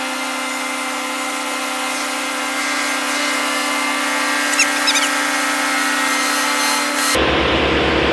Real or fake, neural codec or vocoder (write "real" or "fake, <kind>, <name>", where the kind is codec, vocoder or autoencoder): real